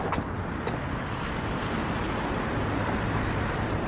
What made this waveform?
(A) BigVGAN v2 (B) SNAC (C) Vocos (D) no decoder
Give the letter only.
D